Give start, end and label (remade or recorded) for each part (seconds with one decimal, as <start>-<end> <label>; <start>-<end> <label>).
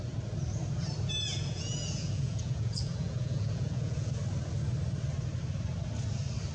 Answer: 0.0-1.3 recorded; 1.3-4.1 remade; 4.1-6.5 recorded